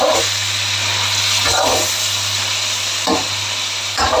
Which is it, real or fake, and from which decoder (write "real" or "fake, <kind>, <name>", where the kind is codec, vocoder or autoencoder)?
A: real